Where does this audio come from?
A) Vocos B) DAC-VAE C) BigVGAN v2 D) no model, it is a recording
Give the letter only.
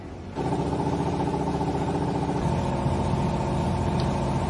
D